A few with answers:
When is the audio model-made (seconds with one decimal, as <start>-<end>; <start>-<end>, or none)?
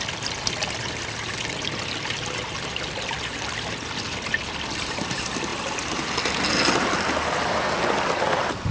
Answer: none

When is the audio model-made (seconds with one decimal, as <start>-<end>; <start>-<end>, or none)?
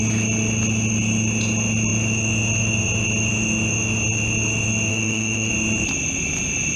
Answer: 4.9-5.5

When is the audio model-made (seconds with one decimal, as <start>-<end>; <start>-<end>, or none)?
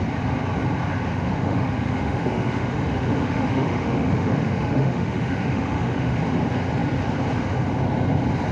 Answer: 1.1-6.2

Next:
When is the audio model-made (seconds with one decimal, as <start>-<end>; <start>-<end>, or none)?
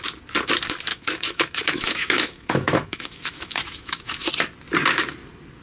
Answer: 0.9-4.3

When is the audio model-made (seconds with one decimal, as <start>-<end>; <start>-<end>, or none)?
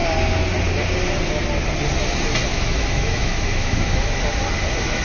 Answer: 2.5-4.2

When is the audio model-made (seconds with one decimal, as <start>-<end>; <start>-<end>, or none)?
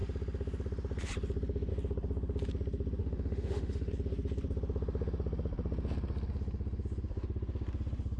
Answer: 3.0-3.9